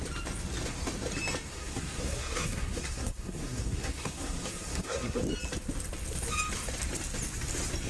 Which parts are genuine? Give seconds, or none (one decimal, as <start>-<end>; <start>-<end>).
0.0-1.5; 5.2-7.9